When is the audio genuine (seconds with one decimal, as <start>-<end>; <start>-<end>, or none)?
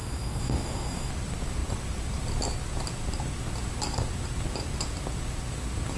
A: 1.1-6.0